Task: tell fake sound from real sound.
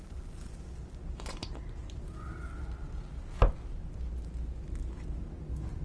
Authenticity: real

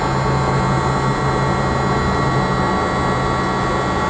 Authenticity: real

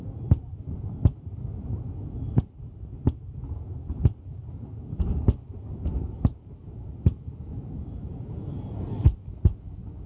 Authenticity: real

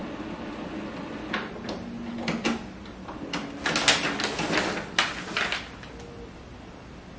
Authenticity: real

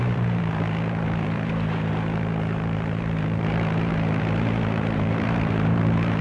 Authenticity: fake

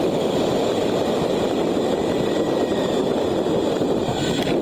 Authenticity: real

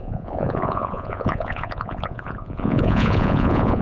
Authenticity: fake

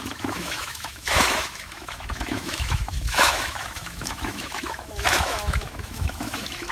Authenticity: fake